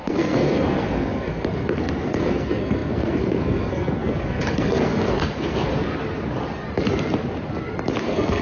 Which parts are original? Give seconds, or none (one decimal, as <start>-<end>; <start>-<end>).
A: 5.7-8.0